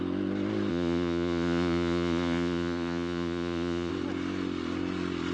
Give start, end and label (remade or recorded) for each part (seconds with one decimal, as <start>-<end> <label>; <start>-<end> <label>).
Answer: 0.0-0.7 recorded; 0.7-3.9 remade; 3.9-5.3 recorded